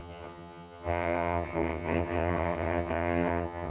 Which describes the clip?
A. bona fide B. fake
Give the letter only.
B